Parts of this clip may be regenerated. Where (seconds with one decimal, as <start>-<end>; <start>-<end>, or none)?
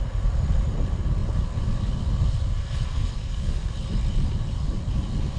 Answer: 2.9-3.7